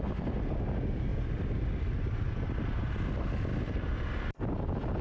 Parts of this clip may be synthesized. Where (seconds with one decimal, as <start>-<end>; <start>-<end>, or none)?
none